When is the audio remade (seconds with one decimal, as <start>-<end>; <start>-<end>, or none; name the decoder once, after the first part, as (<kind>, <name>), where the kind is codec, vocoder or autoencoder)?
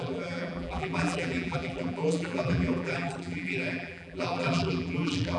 0.0-5.4 (vocoder, BigVGAN v2)